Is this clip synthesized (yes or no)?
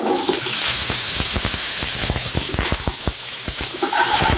yes